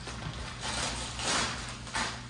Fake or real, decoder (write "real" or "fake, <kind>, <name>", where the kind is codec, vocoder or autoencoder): real